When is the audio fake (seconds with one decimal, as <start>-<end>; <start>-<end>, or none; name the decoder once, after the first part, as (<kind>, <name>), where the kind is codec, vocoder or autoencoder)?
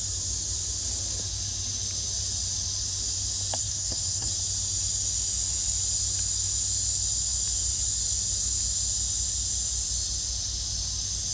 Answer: 3.6-4.3 (codec, SNAC)